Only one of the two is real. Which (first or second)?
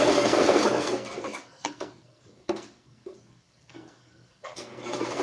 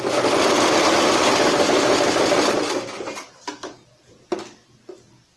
second